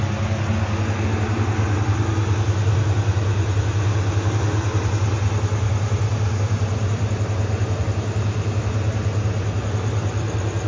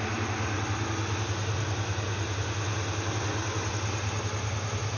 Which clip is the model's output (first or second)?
first